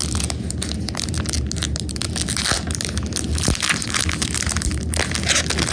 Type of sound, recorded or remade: recorded